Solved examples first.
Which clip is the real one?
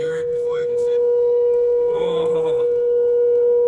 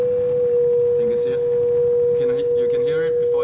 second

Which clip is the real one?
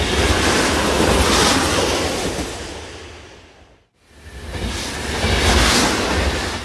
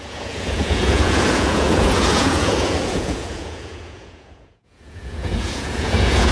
first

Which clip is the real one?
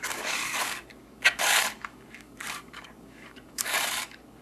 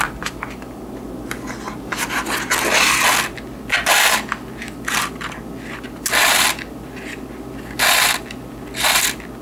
second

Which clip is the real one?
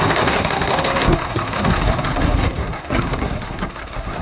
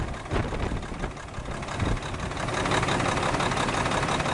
second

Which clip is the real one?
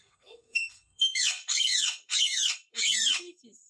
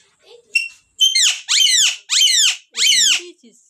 second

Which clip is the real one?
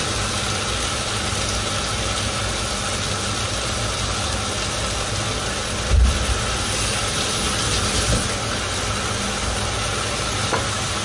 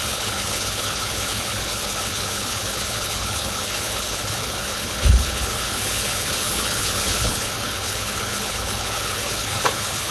first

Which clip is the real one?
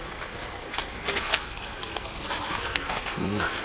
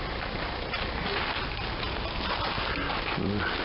second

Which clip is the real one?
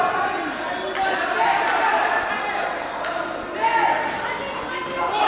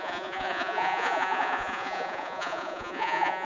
first